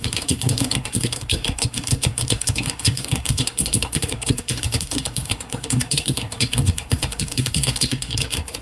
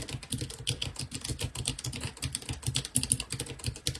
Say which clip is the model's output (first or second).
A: first